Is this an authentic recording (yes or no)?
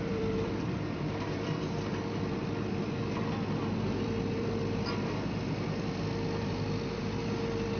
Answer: no